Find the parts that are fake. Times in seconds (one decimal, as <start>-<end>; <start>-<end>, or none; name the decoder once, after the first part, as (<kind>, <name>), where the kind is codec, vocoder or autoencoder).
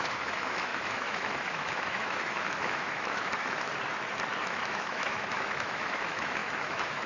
0.0-3.7 (autoencoder, DAC-VAE); 4.4-7.1